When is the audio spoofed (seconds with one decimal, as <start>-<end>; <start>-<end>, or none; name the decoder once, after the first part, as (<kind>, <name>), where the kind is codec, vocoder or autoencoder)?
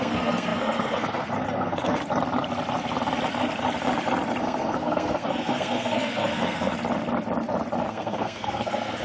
0.0-2.0 (codec, SNAC); 4.4-6.7; 7.9-9.0